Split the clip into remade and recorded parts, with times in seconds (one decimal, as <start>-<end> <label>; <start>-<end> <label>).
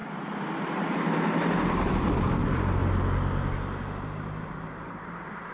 0.0-2.8 remade; 2.8-3.8 recorded; 3.8-5.5 remade